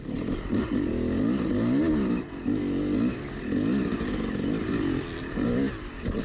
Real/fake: real